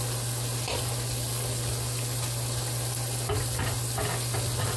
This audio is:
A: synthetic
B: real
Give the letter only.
B